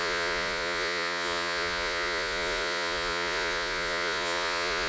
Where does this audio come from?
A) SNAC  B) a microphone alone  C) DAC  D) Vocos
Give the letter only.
D